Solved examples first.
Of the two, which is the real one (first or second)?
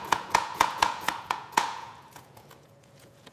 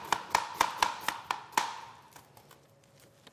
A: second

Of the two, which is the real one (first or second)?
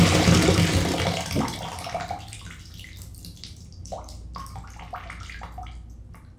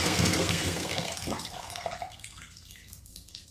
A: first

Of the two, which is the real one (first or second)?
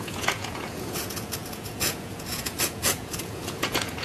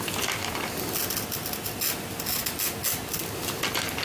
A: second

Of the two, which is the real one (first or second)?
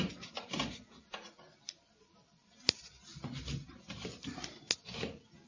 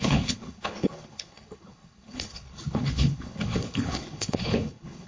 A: first